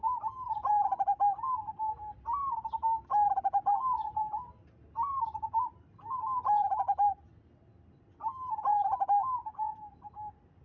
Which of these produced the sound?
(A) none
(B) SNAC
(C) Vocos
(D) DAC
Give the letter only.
A